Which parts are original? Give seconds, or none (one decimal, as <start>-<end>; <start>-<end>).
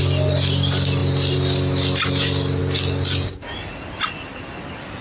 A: 0.0-5.0